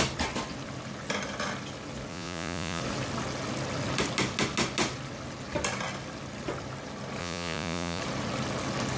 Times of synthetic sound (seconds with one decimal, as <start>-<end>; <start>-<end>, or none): 2.1-2.8; 7.2-8.0

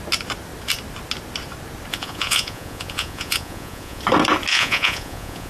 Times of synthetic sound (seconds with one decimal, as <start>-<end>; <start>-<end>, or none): 1.9-4.0; 4.5-5.5

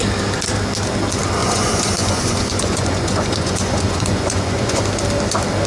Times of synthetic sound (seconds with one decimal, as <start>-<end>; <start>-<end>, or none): 1.4-4.8